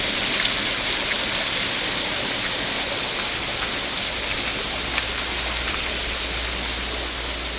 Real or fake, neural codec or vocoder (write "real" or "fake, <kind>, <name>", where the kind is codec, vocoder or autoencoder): real